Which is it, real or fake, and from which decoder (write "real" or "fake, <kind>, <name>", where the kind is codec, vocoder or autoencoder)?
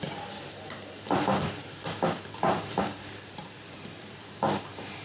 fake, vocoder, BigVGAN v2